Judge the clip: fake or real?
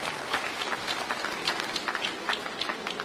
real